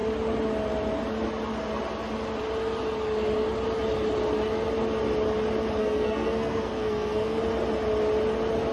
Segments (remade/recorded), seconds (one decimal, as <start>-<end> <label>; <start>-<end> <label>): 0.0-5.8 recorded; 5.8-7.4 remade; 7.4-8.7 recorded